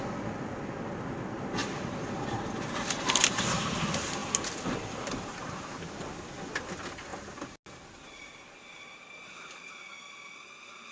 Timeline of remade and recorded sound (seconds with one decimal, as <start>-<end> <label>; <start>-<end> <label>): 0.0-1.6 recorded; 1.6-3.6 remade; 3.6-10.9 recorded